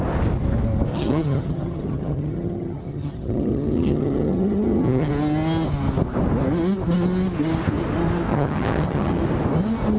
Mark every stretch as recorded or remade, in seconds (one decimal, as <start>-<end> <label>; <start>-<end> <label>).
0.0-0.9 recorded; 0.9-5.1 remade; 5.1-8.3 recorded; 8.3-9.2 remade; 9.2-10.0 recorded